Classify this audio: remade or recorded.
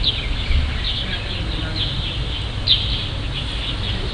recorded